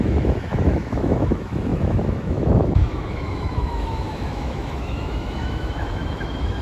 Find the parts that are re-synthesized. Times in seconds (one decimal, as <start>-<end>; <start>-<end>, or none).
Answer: 0.0-6.6